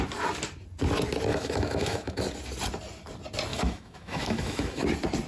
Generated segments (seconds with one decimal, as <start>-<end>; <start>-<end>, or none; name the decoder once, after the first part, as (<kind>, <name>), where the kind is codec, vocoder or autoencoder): 1.3-2.2 (autoencoder, DAC-VAE); 3.5-4.8